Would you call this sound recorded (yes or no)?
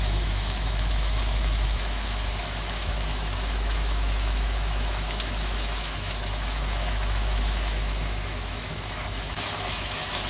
no